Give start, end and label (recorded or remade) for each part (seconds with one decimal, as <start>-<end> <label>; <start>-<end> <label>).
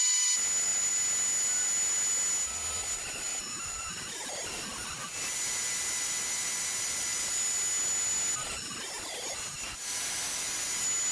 0.0-11.1 recorded